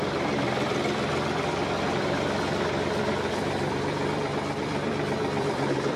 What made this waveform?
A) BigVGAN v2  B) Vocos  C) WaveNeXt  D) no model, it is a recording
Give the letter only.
A